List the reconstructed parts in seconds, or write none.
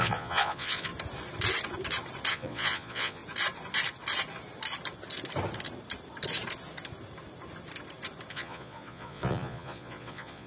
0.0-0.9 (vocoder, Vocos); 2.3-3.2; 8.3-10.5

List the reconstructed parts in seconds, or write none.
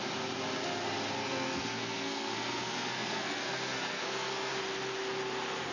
1.2-4.5 (codec, SNAC)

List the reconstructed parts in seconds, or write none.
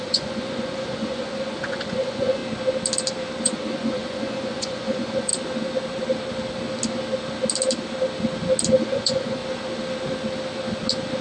0.0-2.4 (vocoder, Vocos); 3.4-5.3; 8.8-9.4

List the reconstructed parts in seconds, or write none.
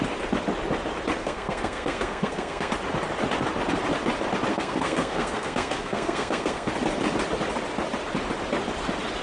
1.2-2.7 (codec, SNAC); 4.5-6.7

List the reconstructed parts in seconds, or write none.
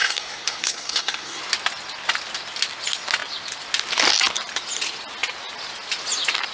0.0-1.4 (codec, SNAC)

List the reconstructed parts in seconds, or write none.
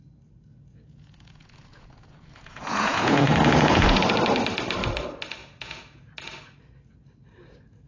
0.5-4.0 (vocoder, Vocos); 5.4-6.1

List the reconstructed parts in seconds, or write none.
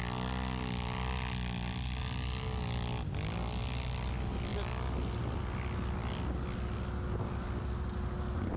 none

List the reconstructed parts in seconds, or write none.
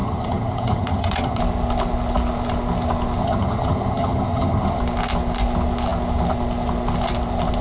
0.0-1.4 (vocoder, HiFi-GAN); 3.2-4.8